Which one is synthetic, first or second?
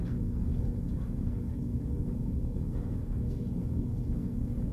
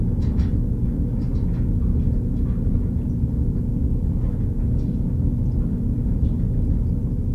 first